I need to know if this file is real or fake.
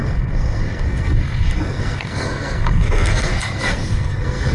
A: fake